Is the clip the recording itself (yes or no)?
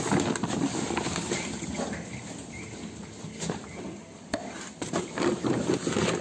yes